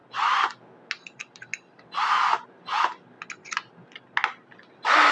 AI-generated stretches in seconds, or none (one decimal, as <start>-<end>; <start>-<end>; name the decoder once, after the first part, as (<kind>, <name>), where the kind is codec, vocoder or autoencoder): none

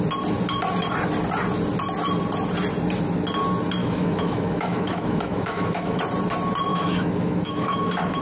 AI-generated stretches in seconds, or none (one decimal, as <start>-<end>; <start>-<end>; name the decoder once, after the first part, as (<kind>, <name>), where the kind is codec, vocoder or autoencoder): 3.8-6.0 (autoencoder, DAC-VAE); 6.7-8.2

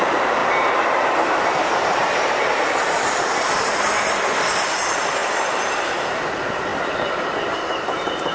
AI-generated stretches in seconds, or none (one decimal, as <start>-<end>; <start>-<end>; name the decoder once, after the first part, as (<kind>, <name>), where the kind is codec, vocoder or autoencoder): 0.0-5.2 (vocoder, BigVGAN v2); 5.7-8.3

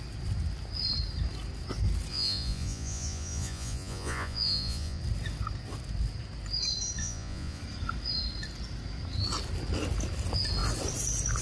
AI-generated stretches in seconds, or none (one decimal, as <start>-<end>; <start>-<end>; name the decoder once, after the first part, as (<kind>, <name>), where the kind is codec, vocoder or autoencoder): 2.1-5.0 (vocoder, Vocos); 7.0-7.6

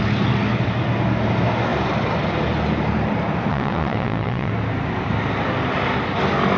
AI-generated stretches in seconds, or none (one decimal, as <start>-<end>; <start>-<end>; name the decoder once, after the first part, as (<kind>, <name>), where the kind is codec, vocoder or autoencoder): 3.5-4.5 (vocoder, WaveNeXt)